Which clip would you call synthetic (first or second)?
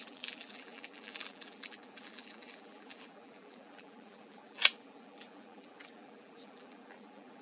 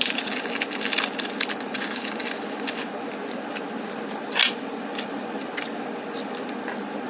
first